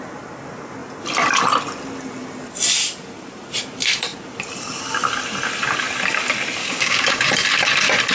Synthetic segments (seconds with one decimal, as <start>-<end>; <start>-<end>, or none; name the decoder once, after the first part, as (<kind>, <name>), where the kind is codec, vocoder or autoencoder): 6.6-7.3 (codec, DAC)